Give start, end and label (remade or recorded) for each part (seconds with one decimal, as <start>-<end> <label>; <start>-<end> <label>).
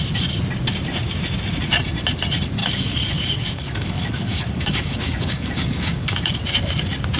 0.0-2.6 recorded; 2.6-6.4 remade; 6.4-7.2 recorded